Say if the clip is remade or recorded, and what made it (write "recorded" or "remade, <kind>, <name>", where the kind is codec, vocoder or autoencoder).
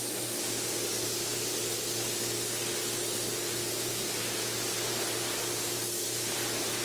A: recorded